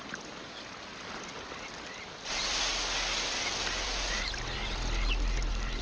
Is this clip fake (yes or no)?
no